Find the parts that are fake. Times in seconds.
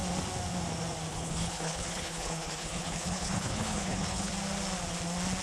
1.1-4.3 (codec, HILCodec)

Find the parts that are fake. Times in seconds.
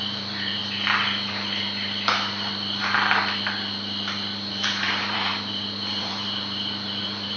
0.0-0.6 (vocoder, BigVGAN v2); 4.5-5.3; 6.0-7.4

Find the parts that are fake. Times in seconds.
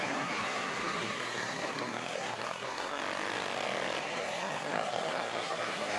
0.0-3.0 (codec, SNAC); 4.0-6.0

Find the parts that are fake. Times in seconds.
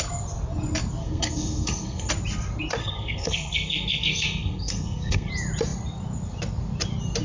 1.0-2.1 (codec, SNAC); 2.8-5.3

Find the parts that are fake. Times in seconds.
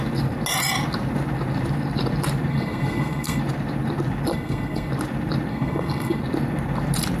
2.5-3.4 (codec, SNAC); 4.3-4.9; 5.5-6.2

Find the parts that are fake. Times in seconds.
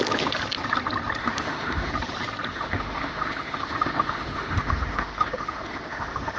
1.2-1.9 (autoencoder, DAC-VAE); 2.5-6.4